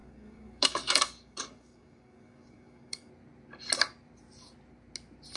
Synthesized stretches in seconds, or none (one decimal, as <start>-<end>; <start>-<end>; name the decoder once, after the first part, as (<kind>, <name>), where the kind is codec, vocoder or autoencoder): 0.0-3.1 (codec, DAC)